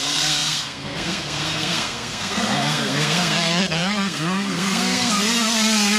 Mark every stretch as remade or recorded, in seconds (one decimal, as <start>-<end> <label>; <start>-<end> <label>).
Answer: 0.0-6.0 remade